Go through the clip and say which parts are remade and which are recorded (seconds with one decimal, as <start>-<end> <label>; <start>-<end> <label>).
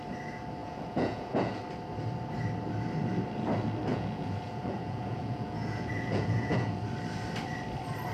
0.0-0.6 recorded; 0.6-1.6 remade; 1.6-3.9 recorded; 3.9-6.8 remade; 6.8-8.1 recorded